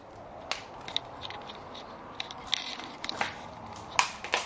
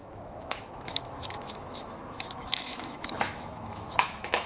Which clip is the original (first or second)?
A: first